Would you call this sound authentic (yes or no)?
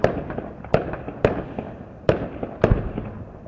yes